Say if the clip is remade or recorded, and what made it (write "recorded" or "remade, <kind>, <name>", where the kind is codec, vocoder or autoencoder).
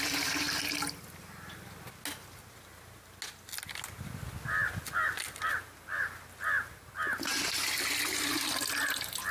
recorded